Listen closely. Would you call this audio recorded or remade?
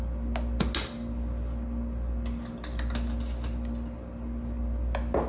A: recorded